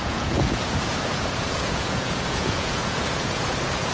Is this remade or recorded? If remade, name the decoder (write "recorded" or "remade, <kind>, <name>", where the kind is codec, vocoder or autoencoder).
remade, vocoder, Vocos